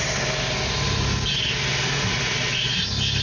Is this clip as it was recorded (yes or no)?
yes